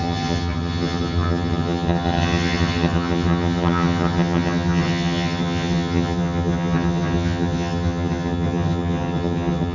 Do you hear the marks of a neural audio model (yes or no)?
yes